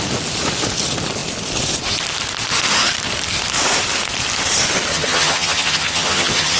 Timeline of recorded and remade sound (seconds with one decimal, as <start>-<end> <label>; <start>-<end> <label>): 0.0-4.9 recorded; 4.9-6.6 remade

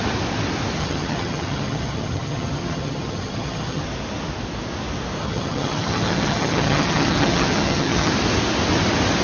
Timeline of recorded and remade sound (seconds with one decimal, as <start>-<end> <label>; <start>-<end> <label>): 0.0-0.8 recorded; 0.8-3.8 remade; 3.8-5.2 recorded; 5.2-8.1 remade; 8.1-9.2 recorded

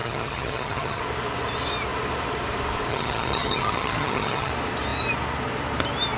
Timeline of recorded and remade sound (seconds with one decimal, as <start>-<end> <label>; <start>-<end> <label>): 0.0-1.0 remade; 1.0-2.9 recorded; 2.9-4.5 remade; 4.5-6.2 recorded

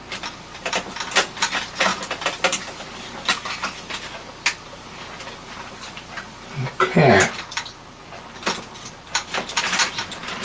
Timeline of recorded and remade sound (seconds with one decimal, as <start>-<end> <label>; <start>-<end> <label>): 0.0-10.4 recorded

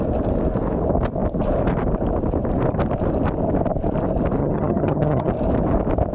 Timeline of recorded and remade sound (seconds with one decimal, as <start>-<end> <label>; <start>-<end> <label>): 0.0-4.4 recorded; 4.4-5.3 remade; 5.3-6.1 recorded

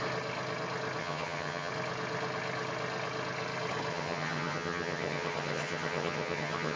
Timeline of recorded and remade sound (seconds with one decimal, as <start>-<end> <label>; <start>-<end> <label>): 0.0-1.0 recorded; 1.0-1.7 remade; 1.7-3.9 recorded; 3.9-6.8 remade